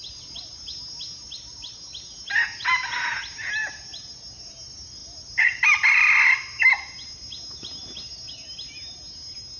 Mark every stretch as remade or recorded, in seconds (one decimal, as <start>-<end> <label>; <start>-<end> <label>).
0.0-9.6 recorded

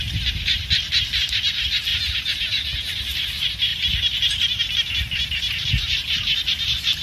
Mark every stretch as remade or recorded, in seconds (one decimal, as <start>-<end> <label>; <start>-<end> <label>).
0.0-1.9 recorded; 1.9-2.9 remade; 2.9-7.0 recorded

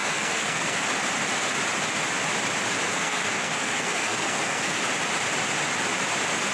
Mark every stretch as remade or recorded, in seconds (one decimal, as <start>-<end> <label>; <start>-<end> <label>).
0.0-0.8 remade; 0.8-2.9 recorded; 2.9-4.8 remade; 4.8-6.5 recorded

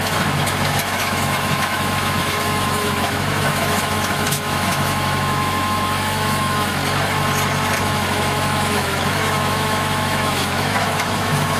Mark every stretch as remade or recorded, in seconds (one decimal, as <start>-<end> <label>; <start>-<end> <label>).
0.0-6.8 remade; 6.8-7.8 recorded; 7.8-11.6 remade

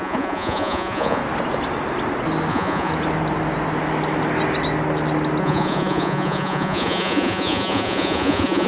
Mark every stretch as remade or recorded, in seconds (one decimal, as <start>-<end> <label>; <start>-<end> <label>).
0.0-1.2 remade; 1.2-2.5 recorded; 2.5-2.9 remade; 2.9-5.4 recorded; 5.4-8.7 remade